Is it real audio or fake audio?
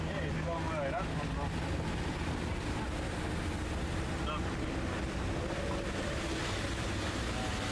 real